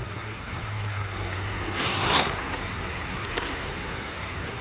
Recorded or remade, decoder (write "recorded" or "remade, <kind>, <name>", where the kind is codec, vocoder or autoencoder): remade, codec, SNAC